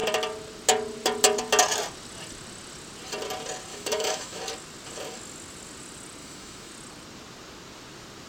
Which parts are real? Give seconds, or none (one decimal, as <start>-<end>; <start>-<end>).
0.0-3.7; 4.4-6.2; 6.7-8.3